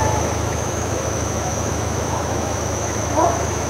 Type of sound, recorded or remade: remade